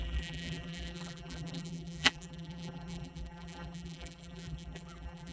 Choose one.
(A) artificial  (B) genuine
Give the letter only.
A